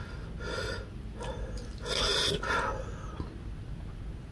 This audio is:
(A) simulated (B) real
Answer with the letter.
B